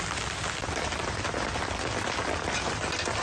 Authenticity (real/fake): real